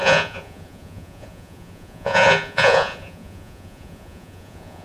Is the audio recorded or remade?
remade